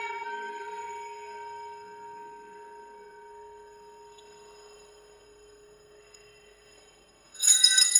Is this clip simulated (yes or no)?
yes